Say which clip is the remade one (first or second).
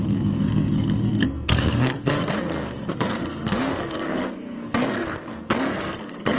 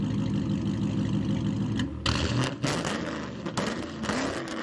first